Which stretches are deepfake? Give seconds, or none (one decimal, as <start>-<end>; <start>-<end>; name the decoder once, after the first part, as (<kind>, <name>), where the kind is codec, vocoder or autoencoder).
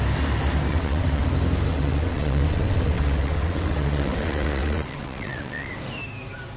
0.7-1.2 (vocoder, WaveNeXt); 1.7-5.7